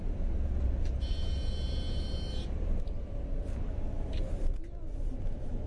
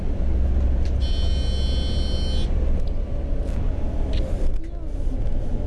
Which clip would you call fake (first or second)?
first